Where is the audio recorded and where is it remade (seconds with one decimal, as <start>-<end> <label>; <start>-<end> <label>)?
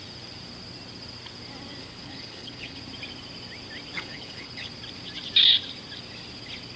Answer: 0.0-1.8 recorded; 1.8-2.8 remade; 2.8-3.9 recorded; 3.9-4.7 remade; 4.7-6.8 recorded